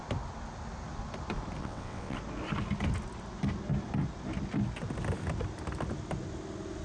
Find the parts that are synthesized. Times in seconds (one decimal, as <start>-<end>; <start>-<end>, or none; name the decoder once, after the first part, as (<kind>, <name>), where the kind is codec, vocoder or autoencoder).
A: 1.6-2.2 (vocoder, WaveNeXt)